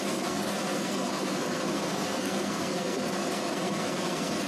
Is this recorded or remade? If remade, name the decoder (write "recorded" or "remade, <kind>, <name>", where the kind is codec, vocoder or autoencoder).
remade, codec, SNAC